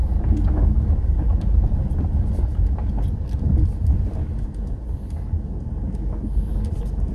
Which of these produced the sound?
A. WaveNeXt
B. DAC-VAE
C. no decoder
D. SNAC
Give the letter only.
C